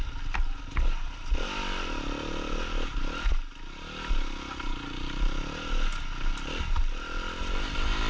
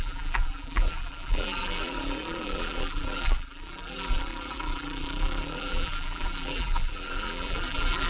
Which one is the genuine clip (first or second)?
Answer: first